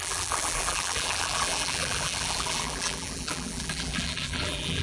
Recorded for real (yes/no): no